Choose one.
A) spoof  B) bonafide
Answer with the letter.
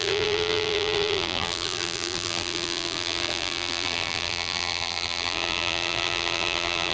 A